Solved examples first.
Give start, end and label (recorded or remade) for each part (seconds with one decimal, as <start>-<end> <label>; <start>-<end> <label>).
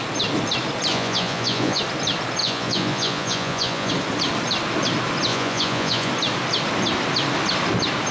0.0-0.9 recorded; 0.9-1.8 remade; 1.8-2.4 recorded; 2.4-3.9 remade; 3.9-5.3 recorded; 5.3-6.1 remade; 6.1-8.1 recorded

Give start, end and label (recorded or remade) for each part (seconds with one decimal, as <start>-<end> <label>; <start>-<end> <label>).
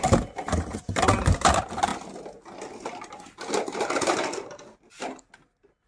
0.0-5.9 recorded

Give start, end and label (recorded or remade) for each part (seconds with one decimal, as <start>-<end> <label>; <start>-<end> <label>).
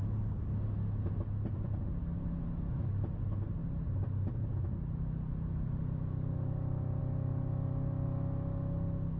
0.0-9.2 recorded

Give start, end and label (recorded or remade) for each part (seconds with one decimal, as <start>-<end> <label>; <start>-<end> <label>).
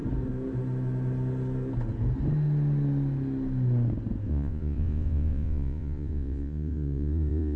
0.0-4.3 recorded; 4.3-7.6 remade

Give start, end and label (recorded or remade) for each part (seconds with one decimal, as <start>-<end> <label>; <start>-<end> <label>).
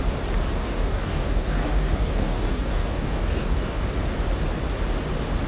0.0-0.6 recorded; 0.6-3.9 remade; 3.9-5.5 recorded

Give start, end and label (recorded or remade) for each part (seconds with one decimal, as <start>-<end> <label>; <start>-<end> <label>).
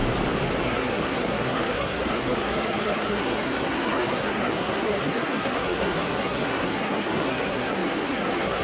0.0-0.6 recorded; 0.6-8.6 remade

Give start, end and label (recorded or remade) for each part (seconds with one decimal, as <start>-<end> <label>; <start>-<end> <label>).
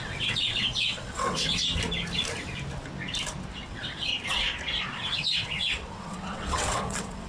0.0-1.6 remade; 1.6-3.5 recorded; 3.5-4.1 remade; 4.1-4.9 recorded; 4.9-7.3 remade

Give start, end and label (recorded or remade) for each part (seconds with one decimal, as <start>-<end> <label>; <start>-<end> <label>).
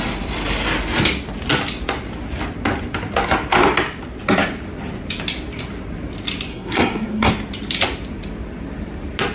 0.0-6.5 recorded; 6.5-7.3 remade; 7.3-9.3 recorded